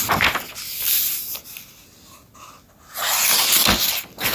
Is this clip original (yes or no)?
yes